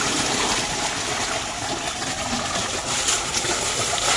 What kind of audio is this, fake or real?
real